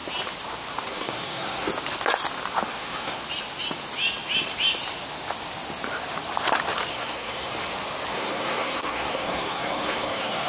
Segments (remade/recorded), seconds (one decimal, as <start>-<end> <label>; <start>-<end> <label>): 0.0-0.9 recorded; 0.9-1.7 remade; 1.7-2.8 recorded; 2.8-3.2 remade; 3.2-6.9 recorded; 6.9-7.5 remade; 7.5-8.1 recorded; 8.1-10.5 remade